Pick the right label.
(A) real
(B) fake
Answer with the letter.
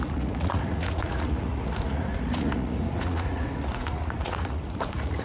B